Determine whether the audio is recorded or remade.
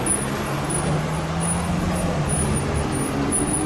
recorded